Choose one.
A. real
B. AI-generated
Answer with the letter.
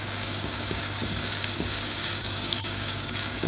B